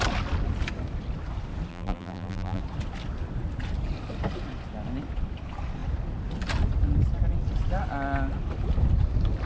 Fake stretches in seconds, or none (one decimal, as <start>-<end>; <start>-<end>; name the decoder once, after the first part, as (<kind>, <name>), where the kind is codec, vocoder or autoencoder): 1.7-2.6 (vocoder, BigVGAN v2)